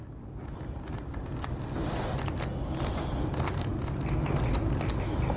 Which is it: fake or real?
real